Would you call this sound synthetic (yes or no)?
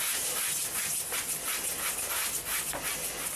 no